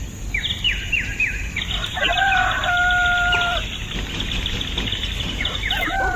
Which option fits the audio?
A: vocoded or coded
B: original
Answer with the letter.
B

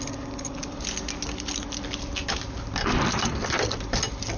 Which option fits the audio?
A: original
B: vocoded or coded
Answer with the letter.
A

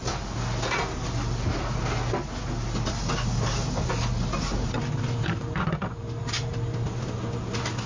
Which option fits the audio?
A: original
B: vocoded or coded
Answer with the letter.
A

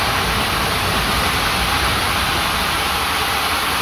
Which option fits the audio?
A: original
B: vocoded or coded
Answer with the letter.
A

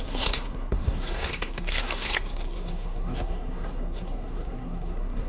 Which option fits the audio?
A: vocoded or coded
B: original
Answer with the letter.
A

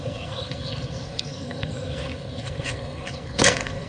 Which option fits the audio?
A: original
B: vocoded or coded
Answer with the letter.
B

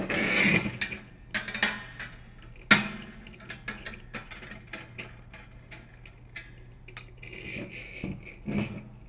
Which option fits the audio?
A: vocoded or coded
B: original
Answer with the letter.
B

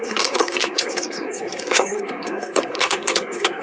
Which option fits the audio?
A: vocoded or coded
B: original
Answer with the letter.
A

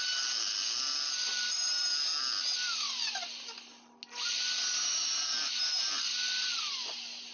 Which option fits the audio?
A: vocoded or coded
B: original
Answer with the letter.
B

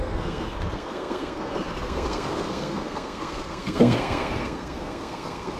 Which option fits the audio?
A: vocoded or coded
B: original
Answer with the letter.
A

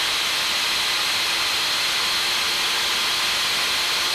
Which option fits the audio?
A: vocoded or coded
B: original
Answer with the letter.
B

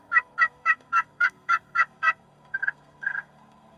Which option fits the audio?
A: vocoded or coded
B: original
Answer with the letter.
A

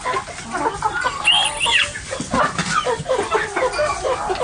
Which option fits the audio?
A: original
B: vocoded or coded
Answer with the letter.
A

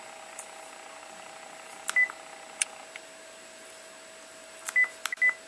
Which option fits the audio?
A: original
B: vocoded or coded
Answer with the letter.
A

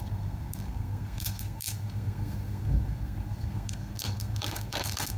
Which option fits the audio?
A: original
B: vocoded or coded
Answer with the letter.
B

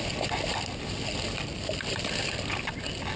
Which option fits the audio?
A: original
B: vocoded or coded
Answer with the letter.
A